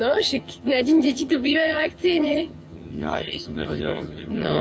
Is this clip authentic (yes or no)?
no